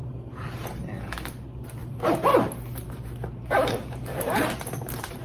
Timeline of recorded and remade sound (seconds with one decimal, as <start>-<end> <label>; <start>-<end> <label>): 0.0-0.8 remade; 0.8-1.8 recorded; 1.8-2.4 remade; 2.4-4.1 recorded; 4.1-5.2 remade